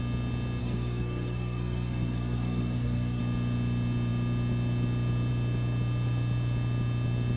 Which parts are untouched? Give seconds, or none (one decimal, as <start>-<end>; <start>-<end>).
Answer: 0.0-0.6; 3.2-7.4